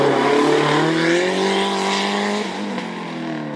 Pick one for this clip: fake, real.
real